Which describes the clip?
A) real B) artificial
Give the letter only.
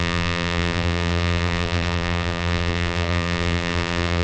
B